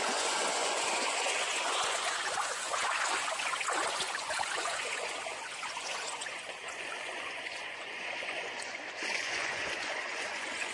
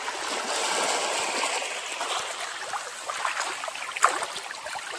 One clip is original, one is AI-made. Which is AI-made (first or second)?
first